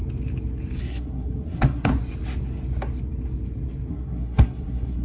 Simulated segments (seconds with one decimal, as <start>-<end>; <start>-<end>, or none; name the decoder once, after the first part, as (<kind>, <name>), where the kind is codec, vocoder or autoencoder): 0.8-1.9 (codec, SNAC); 3.9-5.0